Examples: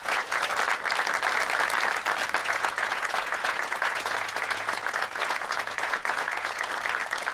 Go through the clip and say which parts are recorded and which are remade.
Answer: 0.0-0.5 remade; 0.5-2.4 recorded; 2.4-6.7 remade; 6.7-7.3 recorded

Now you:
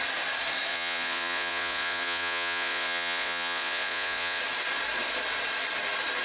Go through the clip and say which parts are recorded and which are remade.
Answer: 0.0-0.7 recorded; 0.7-4.4 remade; 4.4-6.2 recorded

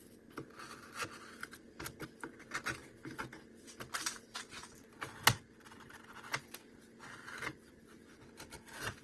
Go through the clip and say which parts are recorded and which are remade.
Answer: 0.0-9.0 recorded

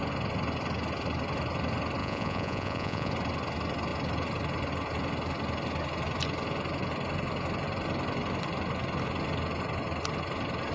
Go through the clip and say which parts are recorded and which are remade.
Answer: 0.0-2.0 recorded; 2.0-3.1 remade; 3.1-10.7 recorded